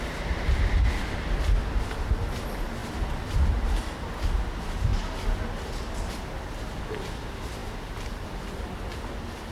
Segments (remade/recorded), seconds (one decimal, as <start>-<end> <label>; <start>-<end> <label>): 0.0-9.5 recorded